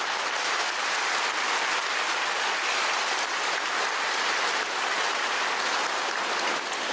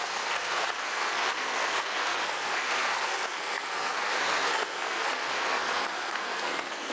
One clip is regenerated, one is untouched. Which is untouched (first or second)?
first